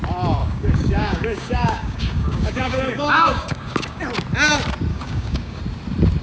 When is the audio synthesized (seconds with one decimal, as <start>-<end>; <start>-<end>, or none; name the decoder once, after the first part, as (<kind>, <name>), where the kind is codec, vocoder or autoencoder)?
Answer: 0.4-4.0 (codec, DAC); 4.9-5.6